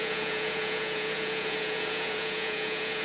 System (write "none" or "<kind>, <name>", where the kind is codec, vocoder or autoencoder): vocoder, Vocos